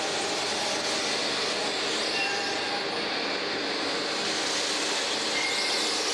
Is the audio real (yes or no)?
yes